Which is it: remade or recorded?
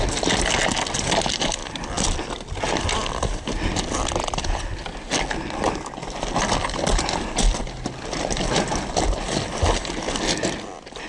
recorded